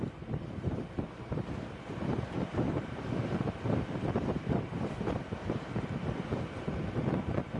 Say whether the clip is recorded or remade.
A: remade